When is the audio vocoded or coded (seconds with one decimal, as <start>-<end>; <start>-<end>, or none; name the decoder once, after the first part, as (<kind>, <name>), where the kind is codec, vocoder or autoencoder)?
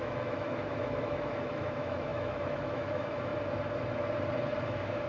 0.0-3.3 (autoencoder, DAC-VAE); 4.6-5.1